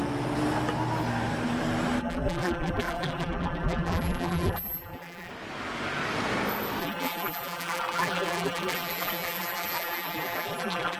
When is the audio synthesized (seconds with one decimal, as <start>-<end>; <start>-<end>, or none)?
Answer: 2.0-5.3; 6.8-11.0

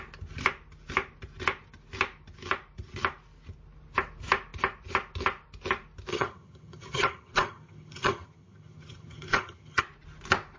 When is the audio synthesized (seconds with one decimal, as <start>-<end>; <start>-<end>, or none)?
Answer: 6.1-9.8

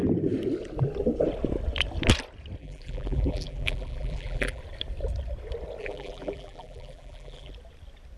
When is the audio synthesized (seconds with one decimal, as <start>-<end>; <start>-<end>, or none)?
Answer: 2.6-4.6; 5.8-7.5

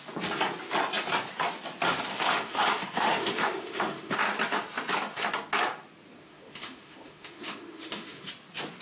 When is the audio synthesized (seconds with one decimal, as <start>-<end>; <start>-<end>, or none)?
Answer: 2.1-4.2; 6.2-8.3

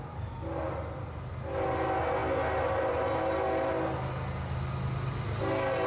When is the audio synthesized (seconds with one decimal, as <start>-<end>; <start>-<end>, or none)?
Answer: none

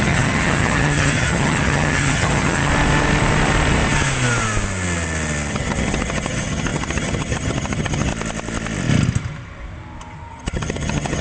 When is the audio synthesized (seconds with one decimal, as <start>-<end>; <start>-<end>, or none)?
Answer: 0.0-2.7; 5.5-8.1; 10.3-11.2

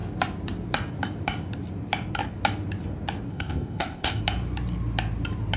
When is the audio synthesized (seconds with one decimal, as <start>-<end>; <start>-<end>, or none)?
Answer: 3.3-4.2

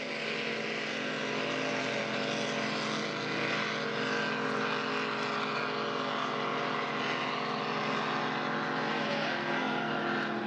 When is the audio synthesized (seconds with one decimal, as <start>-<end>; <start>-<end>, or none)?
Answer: 8.9-9.9